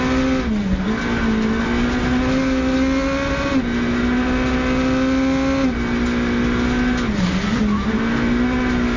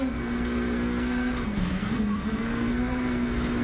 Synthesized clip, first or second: second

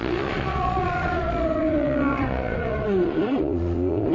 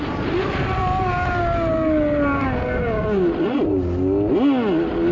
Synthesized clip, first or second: first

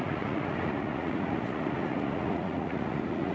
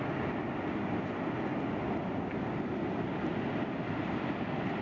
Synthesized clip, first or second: first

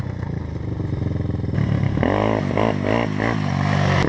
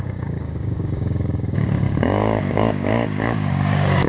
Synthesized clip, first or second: second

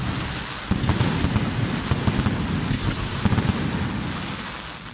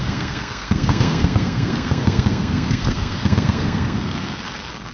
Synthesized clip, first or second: second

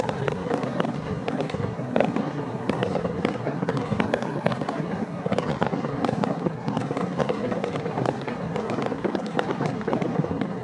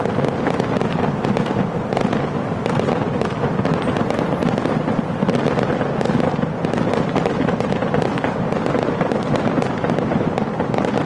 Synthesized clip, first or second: first